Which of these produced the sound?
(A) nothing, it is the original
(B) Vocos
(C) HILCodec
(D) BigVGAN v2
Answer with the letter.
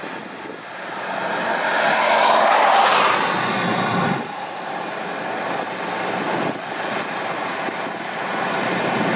A